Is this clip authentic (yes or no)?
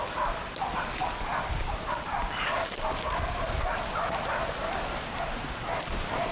yes